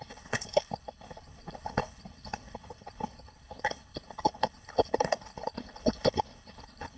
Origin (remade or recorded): remade